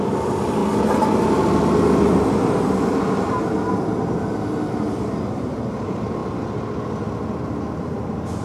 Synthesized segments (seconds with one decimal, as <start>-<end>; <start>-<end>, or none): 0.0-0.6; 4.7-6.2; 7.8-8.4